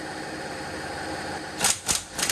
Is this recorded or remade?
recorded